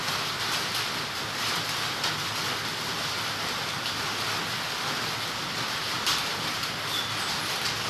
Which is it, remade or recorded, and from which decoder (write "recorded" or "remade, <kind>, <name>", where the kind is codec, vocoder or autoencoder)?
recorded